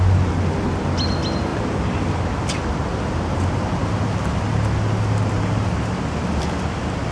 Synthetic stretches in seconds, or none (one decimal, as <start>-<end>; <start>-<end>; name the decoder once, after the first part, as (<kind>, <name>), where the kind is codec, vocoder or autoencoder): none